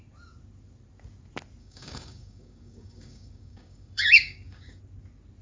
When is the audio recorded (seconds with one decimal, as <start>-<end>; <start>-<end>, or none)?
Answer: 0.0-1.6; 4.8-5.4